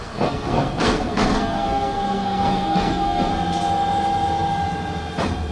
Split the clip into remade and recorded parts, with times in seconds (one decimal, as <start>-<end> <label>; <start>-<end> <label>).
0.0-3.3 remade; 3.3-5.5 recorded